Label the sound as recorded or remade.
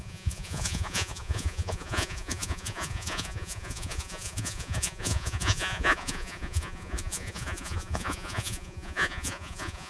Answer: remade